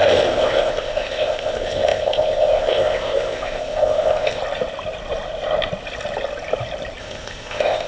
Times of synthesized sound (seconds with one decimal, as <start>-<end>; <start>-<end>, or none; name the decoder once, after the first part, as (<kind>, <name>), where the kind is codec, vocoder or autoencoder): 0.0-4.4 (codec, ZipCodec); 7.0-7.9